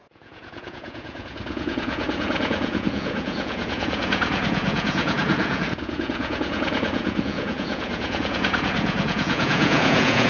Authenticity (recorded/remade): remade